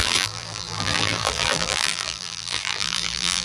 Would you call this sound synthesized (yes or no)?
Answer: yes